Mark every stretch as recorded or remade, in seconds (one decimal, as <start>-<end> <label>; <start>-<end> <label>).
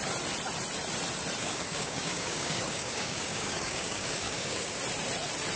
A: 0.0-1.4 recorded; 1.4-4.8 remade; 4.8-5.6 recorded